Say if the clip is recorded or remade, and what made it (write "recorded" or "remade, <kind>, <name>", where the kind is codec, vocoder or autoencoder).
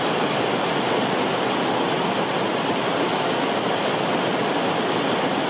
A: recorded